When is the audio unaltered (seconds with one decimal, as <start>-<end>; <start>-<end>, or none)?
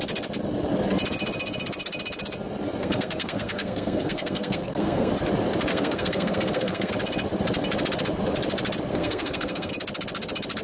0.0-2.8; 5.1-5.7; 6.9-8.9; 9.7-10.6